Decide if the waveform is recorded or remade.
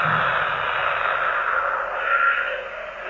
recorded